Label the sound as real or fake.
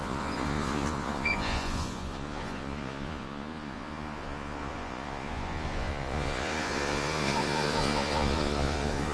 fake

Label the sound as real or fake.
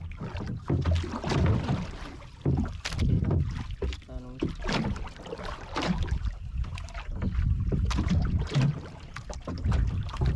real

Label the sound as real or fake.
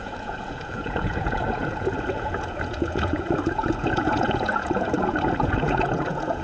fake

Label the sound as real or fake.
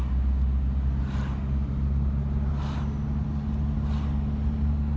real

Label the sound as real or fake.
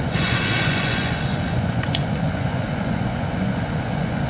fake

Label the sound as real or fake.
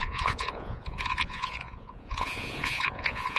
fake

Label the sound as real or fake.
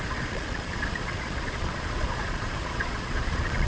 fake